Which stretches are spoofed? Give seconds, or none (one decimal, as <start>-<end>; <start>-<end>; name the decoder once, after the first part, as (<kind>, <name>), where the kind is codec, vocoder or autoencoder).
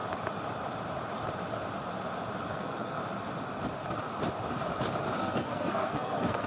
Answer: 2.5-3.0 (codec, SNAC); 5.2-6.5